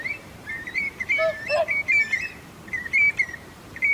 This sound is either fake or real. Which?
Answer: fake